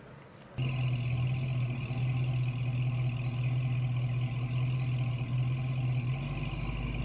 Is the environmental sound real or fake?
real